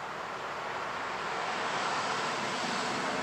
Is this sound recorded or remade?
recorded